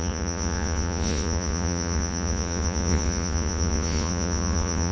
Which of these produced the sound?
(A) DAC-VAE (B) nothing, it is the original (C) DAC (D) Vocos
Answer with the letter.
D